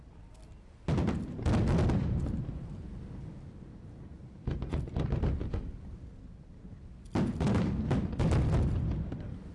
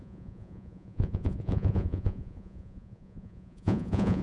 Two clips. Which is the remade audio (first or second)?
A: second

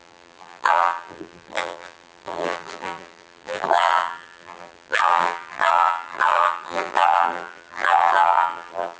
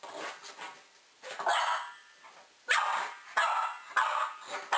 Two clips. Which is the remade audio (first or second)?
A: first